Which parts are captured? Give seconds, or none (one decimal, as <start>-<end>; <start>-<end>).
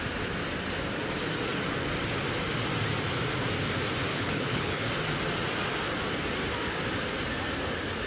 0.0-4.1; 4.9-8.1